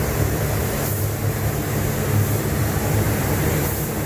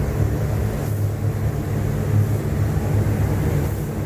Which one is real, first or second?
second